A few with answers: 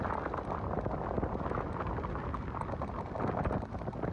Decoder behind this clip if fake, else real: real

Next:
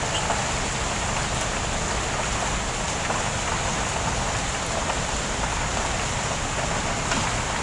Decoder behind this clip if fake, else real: real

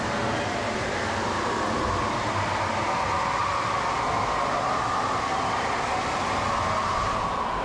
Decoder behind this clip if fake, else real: real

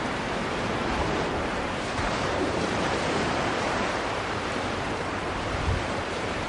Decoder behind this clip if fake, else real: fake, vocoder, BigVGAN v2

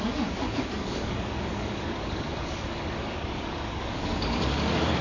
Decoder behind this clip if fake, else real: fake, codec, DAC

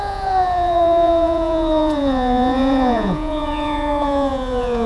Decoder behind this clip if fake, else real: fake, vocoder, Vocos